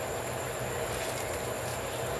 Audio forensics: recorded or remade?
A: recorded